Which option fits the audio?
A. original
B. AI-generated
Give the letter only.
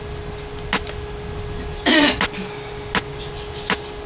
A